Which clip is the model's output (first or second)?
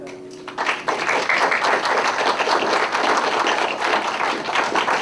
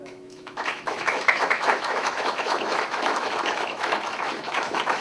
second